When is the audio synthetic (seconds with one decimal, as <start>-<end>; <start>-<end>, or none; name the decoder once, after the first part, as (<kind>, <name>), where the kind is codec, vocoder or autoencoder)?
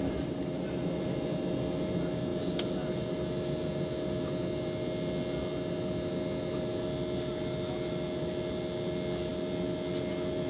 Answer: none